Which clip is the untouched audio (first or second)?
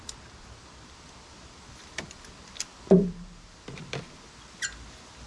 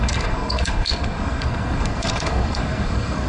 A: first